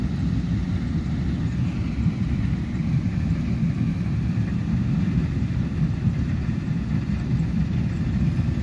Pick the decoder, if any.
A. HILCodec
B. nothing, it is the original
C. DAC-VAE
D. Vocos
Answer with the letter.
B